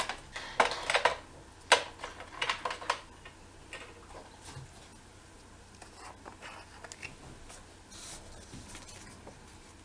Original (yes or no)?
yes